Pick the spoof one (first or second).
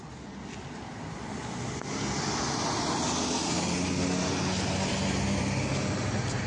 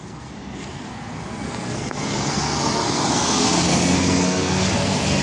second